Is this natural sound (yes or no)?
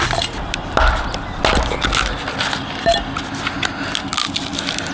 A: yes